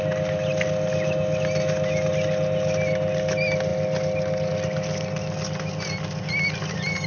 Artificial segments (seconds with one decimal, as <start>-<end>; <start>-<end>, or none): none